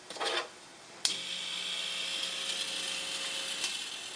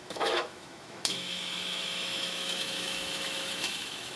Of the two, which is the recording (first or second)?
first